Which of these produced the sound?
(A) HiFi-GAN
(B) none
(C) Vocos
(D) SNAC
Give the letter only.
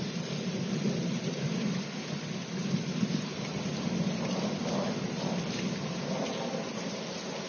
B